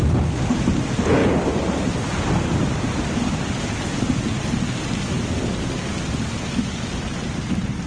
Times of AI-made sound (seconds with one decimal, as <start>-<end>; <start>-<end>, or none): none